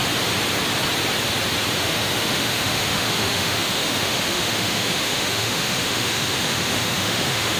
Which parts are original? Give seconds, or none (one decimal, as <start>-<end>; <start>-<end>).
0.0-1.8

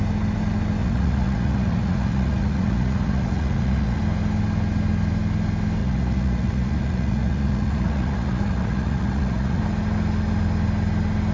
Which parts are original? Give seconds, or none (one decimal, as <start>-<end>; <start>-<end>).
0.0-0.8; 4.0-5.8; 9.6-11.3

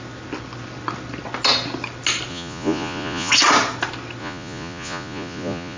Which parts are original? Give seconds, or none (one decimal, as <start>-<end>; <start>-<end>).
0.0-2.3; 3.3-4.2

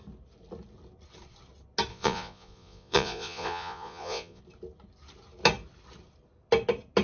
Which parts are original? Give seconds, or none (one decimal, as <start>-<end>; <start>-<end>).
0.0-1.9; 4.4-7.0

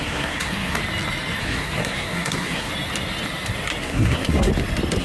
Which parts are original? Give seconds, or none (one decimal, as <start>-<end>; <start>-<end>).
0.8-1.4; 2.7-3.8; 4.5-5.0

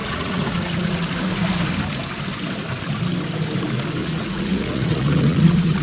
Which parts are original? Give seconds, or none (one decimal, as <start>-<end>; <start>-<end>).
1.0-4.0

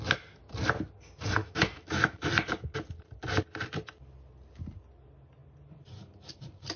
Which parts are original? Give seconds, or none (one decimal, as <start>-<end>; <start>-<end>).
0.0-1.4; 2.3-6.8